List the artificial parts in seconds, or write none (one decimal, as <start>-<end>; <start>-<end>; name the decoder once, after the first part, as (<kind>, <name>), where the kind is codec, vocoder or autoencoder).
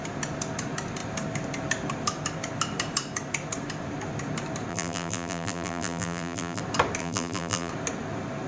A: 4.7-6.6 (vocoder, BigVGAN v2); 7.0-7.7